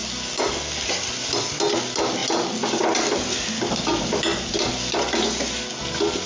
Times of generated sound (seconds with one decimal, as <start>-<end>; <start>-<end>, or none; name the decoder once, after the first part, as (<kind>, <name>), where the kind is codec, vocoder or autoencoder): none